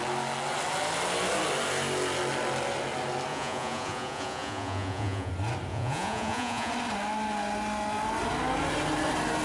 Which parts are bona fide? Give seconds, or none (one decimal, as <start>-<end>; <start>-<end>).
0.0-3.3; 5.3-5.7; 6.7-9.4